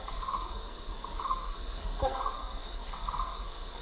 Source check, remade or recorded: remade